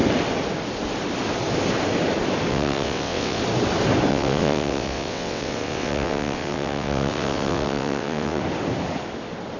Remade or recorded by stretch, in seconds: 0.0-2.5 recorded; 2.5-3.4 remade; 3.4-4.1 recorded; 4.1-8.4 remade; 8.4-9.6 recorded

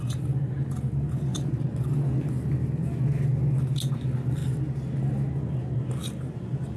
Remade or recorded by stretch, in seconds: 0.0-6.8 recorded

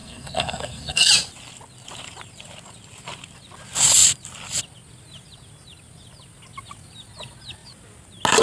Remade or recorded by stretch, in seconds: 0.0-1.1 remade; 1.1-8.4 recorded

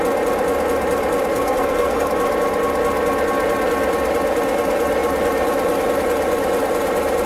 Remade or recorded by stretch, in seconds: 0.0-1.3 recorded; 1.3-2.1 remade; 2.1-7.3 recorded